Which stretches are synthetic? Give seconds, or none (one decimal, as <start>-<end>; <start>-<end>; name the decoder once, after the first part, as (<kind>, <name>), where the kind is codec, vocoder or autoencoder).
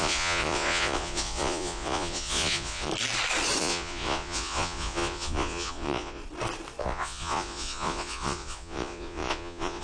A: 0.0-2.9 (vocoder, Vocos); 3.6-6.2; 6.8-9.8